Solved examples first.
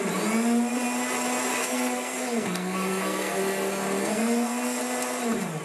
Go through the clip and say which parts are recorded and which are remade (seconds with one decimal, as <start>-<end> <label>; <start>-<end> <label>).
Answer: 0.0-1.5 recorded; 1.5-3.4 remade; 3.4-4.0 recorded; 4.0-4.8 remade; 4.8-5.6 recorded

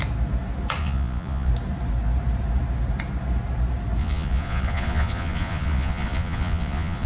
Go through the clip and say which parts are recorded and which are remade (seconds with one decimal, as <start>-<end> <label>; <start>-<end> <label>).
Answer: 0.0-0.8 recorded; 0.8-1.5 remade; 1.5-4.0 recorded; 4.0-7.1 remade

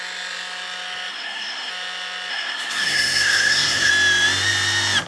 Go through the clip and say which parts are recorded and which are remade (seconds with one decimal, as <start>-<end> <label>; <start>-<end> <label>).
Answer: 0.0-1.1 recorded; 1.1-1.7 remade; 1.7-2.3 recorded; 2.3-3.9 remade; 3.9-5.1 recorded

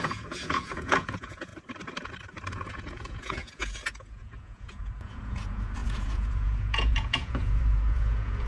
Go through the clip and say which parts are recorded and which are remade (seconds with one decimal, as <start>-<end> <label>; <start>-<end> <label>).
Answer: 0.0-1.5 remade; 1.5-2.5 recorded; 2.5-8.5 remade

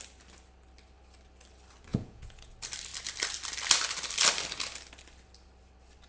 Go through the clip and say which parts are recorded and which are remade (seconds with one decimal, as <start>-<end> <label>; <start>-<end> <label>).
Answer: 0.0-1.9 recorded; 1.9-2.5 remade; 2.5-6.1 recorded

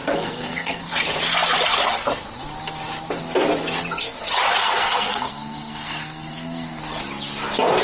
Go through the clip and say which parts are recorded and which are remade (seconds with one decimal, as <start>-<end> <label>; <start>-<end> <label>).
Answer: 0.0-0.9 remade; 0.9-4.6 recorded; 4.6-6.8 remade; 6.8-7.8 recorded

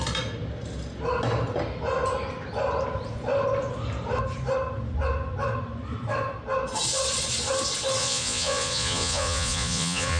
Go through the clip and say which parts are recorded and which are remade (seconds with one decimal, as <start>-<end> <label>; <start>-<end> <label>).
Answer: 0.0-8.0 recorded; 8.0-10.2 remade